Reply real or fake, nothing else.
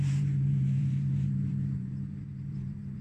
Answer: fake